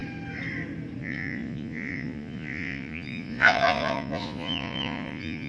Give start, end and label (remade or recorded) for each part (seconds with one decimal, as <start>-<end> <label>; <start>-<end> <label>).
0.0-1.0 recorded; 1.0-5.5 remade